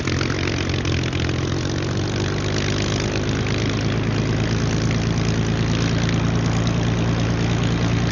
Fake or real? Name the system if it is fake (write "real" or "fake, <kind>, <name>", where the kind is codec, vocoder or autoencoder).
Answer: real